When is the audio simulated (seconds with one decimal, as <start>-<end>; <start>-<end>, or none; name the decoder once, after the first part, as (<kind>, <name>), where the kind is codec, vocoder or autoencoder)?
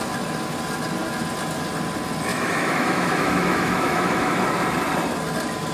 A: 2.3-4.4 (autoencoder, DAC-VAE)